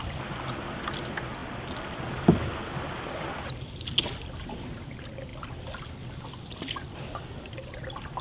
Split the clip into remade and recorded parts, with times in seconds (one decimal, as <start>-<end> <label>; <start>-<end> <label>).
0.0-8.2 recorded